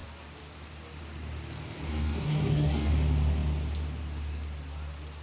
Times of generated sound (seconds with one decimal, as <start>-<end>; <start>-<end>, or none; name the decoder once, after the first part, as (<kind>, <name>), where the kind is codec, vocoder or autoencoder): 1.9-2.9 (codec, SNAC)